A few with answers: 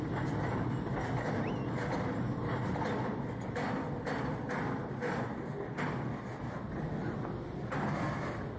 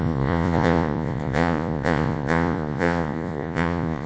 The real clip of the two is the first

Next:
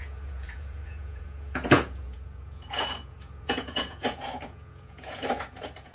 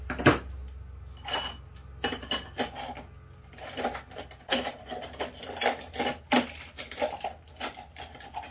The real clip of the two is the second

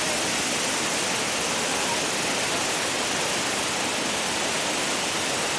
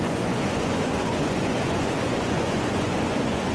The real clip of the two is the first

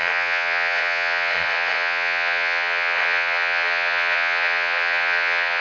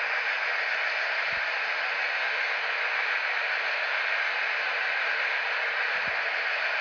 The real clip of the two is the second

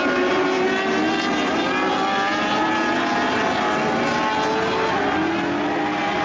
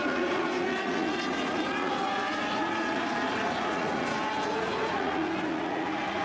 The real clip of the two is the first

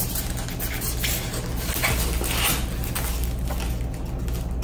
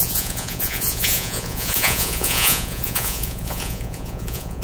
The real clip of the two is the first